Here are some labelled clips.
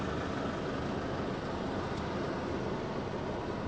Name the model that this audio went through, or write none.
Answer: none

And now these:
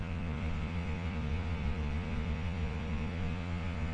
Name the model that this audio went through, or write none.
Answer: vocoder, Vocos